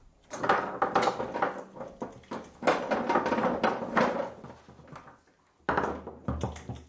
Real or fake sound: real